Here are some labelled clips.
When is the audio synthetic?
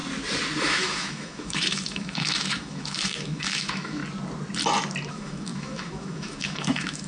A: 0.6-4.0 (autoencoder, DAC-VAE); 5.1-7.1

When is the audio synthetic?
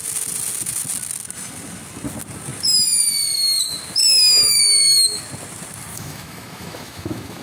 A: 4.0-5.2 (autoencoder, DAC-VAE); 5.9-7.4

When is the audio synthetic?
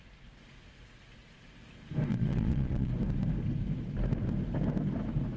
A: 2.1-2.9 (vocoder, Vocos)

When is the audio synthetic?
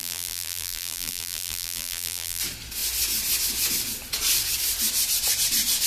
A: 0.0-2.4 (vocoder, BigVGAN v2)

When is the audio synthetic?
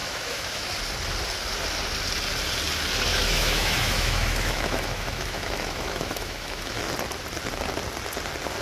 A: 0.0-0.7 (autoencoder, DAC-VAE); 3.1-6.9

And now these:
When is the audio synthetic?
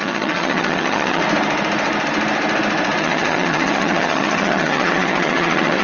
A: 0.0-1.2 (vocoder, HiFi-GAN); 3.0-5.8